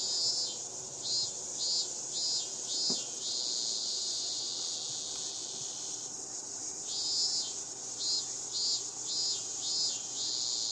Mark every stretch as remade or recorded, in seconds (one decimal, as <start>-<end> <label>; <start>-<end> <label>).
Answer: 0.0-3.8 recorded; 3.8-4.5 remade; 4.5-10.7 recorded